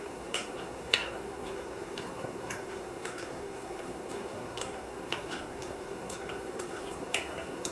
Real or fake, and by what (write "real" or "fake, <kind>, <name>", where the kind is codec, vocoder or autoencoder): fake, codec, SNAC